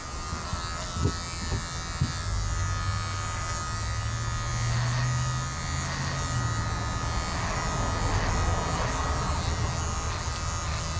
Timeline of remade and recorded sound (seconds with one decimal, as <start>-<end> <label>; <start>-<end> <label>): 0.0-11.0 recorded